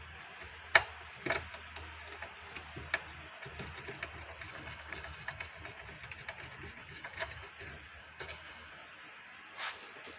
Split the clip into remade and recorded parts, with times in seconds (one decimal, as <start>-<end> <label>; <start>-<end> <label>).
0.0-4.5 recorded; 4.5-5.5 remade; 5.5-6.8 recorded; 6.8-7.5 remade; 7.5-8.0 recorded; 8.0-8.7 remade; 8.7-10.2 recorded